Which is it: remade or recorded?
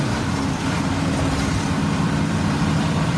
remade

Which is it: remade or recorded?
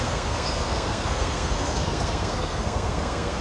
remade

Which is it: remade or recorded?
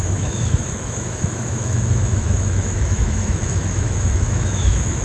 remade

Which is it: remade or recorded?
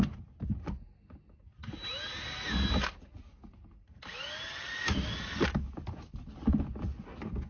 recorded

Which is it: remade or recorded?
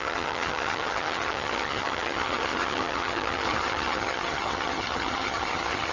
remade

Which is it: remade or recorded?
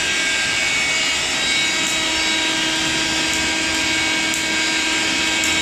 recorded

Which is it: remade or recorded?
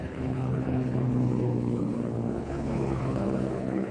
remade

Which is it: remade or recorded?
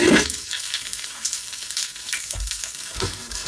remade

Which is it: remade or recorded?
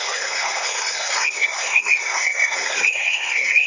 remade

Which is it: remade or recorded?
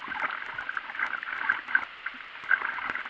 recorded